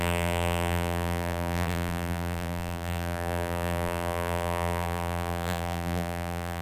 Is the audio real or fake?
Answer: fake